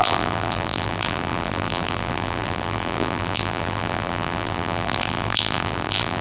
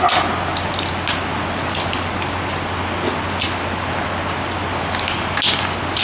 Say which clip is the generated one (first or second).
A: first